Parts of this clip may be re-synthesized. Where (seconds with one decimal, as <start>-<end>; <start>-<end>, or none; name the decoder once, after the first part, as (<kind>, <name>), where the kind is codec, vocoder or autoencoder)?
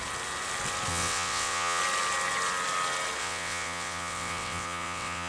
0.9-1.8 (vocoder, WaveNeXt); 3.2-5.3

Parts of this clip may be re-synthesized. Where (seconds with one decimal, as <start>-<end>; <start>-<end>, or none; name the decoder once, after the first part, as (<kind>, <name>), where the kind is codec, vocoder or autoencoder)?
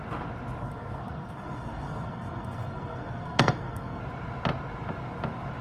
0.6-4.0 (codec, SNAC)